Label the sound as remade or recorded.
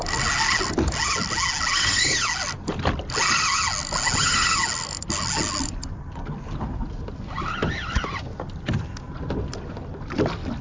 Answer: recorded